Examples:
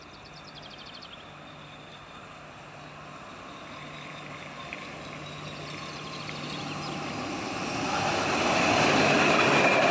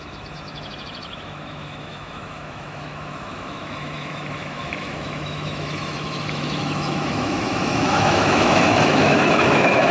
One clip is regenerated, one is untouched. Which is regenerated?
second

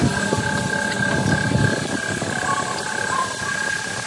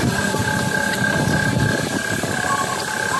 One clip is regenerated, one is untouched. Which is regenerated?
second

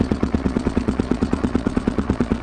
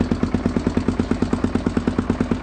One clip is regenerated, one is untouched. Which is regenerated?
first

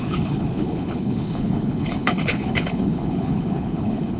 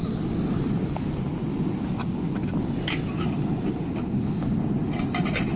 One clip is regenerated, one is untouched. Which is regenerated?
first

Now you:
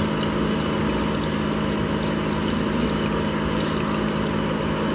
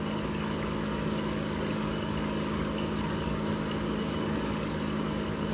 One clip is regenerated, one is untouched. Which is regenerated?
second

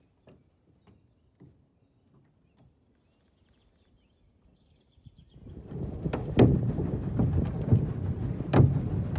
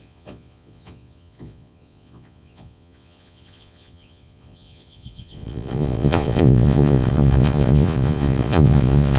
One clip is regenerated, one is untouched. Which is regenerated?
second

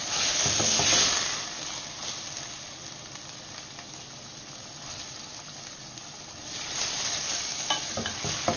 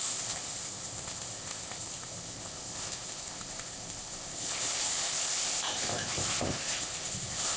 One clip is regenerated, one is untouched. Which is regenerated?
second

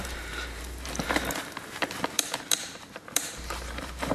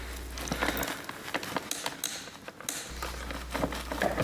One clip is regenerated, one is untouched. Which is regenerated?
first